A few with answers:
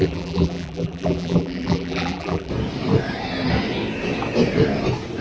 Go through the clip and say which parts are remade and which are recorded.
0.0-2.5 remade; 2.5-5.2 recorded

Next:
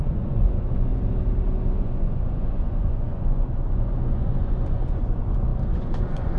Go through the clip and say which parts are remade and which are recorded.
0.0-0.9 remade; 0.9-1.8 recorded; 1.8-6.4 remade

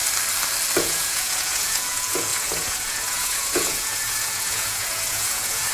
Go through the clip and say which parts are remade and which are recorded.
0.0-0.8 recorded; 0.8-5.7 remade

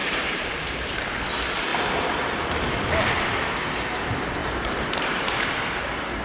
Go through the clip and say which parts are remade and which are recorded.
0.0-0.9 remade; 0.9-1.7 recorded; 1.7-2.9 remade; 2.9-4.4 recorded; 4.4-5.3 remade; 5.3-6.2 recorded

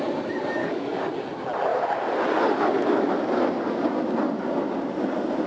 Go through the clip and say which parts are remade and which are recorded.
0.0-0.6 recorded; 0.6-1.1 remade; 1.1-5.5 recorded

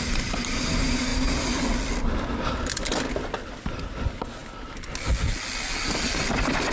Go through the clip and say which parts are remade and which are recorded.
0.0-6.7 recorded